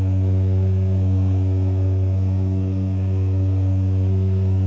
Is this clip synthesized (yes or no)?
yes